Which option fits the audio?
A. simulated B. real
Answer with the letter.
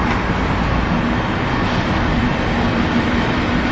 B